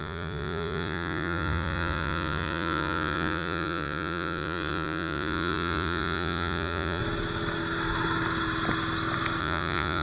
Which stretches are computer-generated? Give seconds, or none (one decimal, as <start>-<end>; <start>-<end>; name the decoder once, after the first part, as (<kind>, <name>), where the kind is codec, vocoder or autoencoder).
0.0-7.0 (vocoder, Vocos); 9.4-10.0